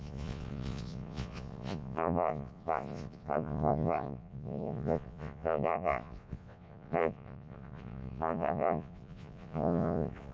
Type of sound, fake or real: fake